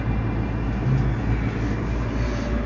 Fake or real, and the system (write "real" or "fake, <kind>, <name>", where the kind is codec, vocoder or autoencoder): real